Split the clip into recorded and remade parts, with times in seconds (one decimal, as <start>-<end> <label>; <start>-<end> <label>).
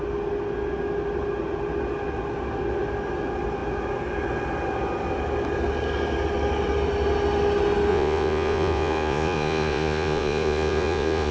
0.0-7.9 recorded; 7.9-11.3 remade